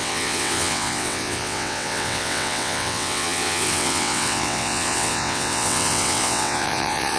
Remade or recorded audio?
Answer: remade